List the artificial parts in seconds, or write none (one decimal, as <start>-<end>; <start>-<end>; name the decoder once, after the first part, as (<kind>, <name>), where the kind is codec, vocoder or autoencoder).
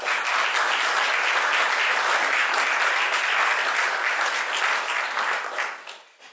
none